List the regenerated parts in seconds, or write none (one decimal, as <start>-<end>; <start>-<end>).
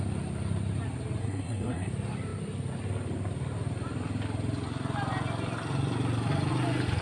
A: 1.2-1.9